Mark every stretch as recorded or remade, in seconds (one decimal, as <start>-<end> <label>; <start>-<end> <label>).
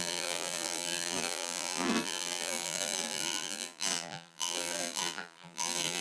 0.0-6.0 remade